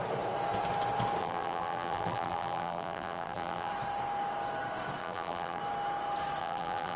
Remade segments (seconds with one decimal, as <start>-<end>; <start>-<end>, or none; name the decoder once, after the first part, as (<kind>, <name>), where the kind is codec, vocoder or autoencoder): 1.2-3.7 (vocoder, BigVGAN v2); 5.0-5.6; 6.4-7.0

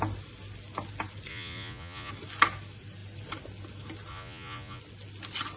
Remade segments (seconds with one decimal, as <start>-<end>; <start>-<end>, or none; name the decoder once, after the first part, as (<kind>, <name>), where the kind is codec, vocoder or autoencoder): 1.3-2.1 (vocoder, Vocos); 4.1-4.8

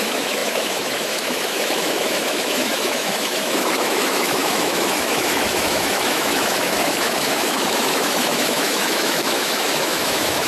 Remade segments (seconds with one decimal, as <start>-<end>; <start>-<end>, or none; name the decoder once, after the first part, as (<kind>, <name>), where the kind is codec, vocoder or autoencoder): 0.0-10.5 (autoencoder, DAC-VAE)